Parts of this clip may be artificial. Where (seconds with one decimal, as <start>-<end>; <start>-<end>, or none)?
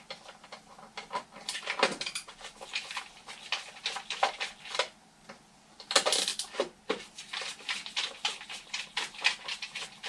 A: none